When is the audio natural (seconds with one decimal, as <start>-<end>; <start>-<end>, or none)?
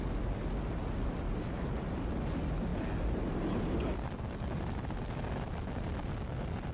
0.0-6.7